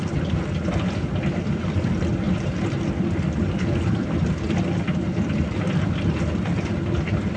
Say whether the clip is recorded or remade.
recorded